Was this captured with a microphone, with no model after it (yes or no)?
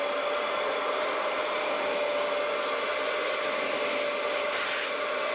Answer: yes